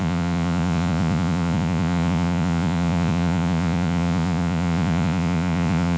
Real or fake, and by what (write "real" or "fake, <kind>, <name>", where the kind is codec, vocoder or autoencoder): fake, vocoder, Vocos